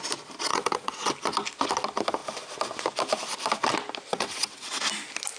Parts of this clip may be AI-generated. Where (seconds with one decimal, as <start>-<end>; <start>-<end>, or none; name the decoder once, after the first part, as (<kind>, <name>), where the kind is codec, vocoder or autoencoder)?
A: 0.5-1.1 (vocoder, WaveNeXt); 4.1-4.8